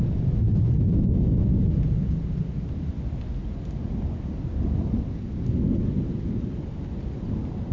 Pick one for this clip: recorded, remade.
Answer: recorded